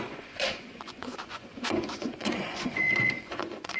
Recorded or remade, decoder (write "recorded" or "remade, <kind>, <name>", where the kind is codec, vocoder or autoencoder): remade, vocoder, Vocos